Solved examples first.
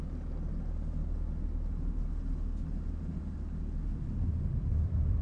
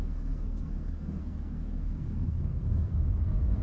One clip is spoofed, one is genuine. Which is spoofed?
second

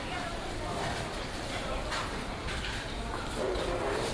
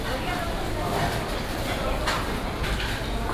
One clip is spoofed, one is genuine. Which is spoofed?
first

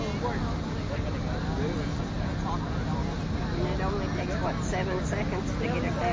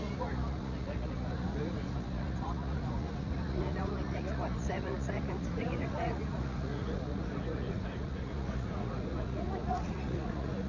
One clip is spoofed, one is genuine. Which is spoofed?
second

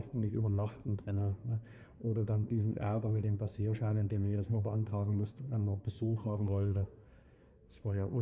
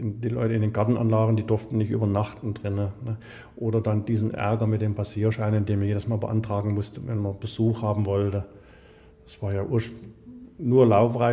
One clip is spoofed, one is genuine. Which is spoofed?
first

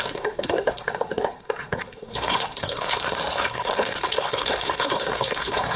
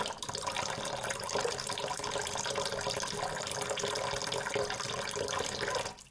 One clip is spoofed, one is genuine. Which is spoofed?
first